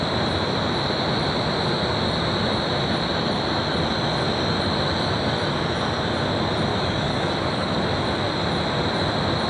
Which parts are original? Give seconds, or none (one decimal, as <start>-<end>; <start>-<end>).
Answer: 0.0-6.7; 7.8-9.5